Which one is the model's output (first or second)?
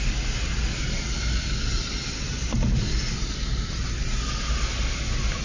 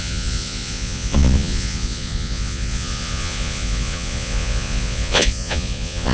second